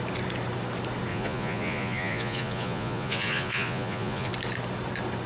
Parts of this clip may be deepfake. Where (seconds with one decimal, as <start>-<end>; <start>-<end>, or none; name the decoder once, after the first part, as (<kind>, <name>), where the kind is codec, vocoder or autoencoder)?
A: 1.1-4.3 (vocoder, Vocos)